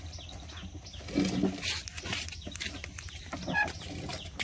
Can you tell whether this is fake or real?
real